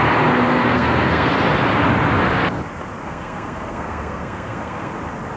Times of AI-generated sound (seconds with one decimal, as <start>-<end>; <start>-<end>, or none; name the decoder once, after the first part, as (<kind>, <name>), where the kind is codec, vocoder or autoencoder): 0.6-1.3 (codec, SNAC); 3.0-4.9